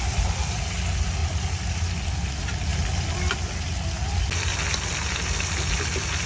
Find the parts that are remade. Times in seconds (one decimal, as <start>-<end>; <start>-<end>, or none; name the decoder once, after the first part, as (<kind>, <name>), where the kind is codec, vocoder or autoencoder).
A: 1.2-1.8 (vocoder, BigVGAN v2)